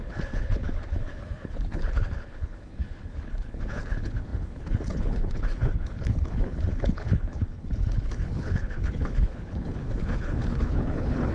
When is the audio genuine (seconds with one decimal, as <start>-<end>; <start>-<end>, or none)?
none